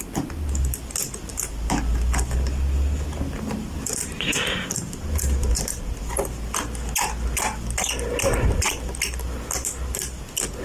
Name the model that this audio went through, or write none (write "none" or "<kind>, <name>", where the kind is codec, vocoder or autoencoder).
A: none